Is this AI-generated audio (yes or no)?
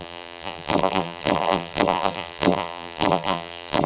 yes